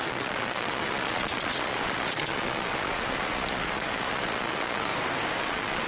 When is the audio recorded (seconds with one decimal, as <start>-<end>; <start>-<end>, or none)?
4.9-5.4